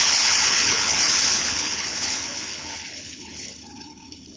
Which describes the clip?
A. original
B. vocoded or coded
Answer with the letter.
B